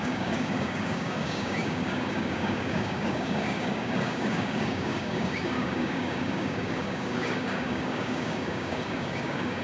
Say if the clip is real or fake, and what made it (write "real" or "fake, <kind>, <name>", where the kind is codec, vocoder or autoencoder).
fake, codec, DAC